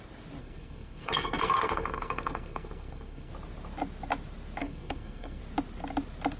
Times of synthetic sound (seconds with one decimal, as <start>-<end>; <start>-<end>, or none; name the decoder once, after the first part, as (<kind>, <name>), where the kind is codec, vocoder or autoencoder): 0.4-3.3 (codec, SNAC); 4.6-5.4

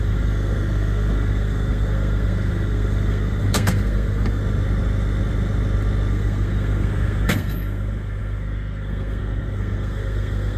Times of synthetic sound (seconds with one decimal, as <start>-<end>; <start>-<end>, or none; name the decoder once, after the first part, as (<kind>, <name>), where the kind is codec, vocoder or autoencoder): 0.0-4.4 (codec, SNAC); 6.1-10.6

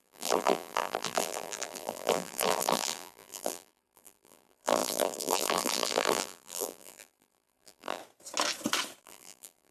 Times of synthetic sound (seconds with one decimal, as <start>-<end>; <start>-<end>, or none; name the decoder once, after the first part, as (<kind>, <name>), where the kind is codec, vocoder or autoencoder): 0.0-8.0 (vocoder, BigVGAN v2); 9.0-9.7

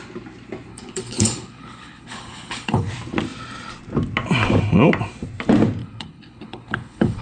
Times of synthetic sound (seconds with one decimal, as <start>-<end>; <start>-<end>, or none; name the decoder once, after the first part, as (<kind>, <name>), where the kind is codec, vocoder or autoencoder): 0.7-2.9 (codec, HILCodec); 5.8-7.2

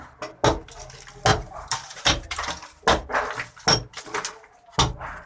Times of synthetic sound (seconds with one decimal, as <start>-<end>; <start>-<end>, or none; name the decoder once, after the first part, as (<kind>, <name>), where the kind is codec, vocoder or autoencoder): 1.3-2.4 (vocoder, BigVGAN v2)

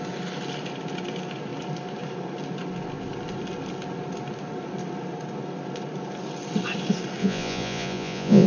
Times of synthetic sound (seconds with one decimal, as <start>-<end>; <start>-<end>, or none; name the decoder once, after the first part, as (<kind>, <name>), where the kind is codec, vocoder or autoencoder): 7.2-8.5 (vocoder, Vocos)

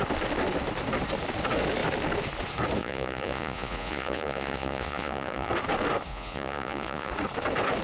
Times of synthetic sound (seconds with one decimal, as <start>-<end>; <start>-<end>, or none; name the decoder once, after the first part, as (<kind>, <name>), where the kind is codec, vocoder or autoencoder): 2.8-5.5 (vocoder, Vocos); 6.1-7.1